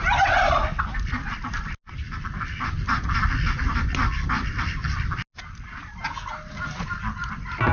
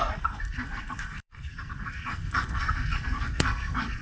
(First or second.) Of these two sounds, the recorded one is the first